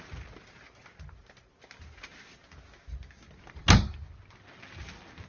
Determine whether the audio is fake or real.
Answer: real